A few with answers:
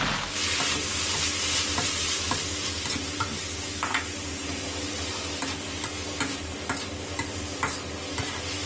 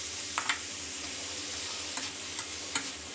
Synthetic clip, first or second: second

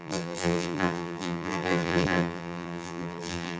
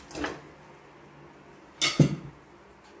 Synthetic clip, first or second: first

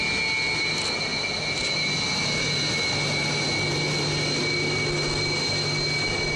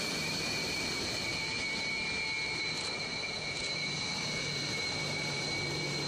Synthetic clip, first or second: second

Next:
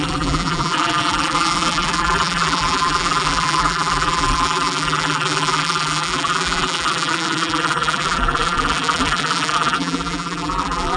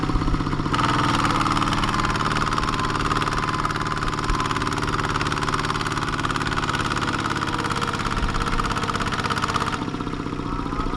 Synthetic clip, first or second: first